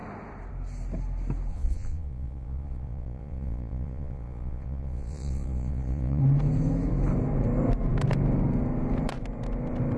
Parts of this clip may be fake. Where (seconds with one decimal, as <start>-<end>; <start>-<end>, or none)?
1.5-6.2